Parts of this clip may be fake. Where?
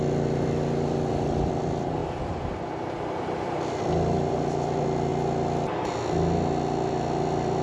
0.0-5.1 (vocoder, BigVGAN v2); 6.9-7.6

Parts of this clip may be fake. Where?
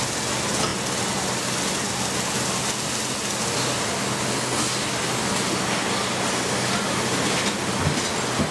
none